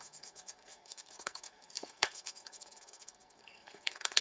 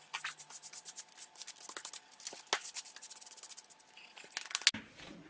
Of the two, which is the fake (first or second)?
first